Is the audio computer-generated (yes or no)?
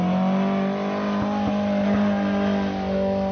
no